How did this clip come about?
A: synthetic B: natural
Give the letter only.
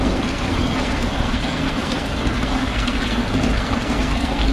A